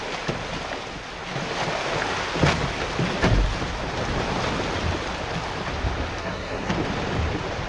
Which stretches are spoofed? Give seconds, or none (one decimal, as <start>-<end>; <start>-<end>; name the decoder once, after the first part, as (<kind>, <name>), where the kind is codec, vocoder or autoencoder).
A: 6.2-6.7 (codec, SNAC)

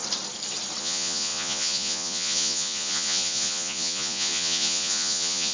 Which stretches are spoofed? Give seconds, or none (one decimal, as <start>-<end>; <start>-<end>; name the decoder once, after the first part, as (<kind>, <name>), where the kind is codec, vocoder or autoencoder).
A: 0.8-5.5 (vocoder, Vocos)

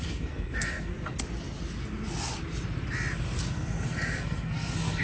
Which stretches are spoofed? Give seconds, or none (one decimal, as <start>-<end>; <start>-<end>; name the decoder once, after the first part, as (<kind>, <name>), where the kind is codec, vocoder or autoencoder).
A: 0.0-0.9 (codec, SNAC); 3.5-5.0